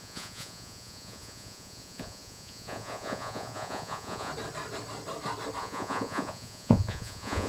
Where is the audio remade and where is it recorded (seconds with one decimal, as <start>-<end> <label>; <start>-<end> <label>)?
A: 0.0-4.3 remade; 4.3-5.6 recorded; 5.6-7.5 remade